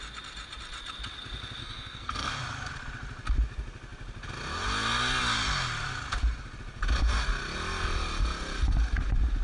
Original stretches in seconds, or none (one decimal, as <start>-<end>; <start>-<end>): 0.0-1.6; 2.4-9.4